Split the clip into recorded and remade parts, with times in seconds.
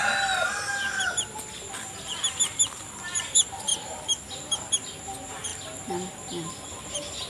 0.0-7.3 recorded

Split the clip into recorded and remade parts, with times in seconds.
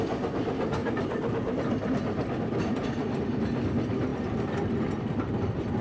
0.0-0.8 recorded; 0.8-3.2 remade; 3.2-5.8 recorded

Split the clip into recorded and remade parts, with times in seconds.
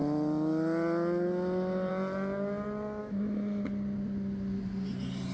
0.0-3.0 recorded; 3.0-3.6 remade; 3.6-5.3 recorded